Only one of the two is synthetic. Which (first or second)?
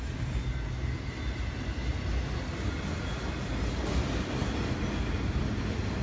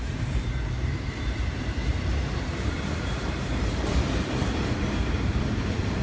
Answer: second